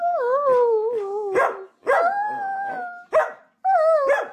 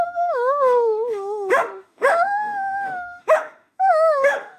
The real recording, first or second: first